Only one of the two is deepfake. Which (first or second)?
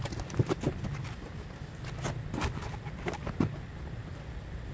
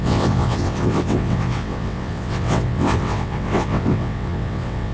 second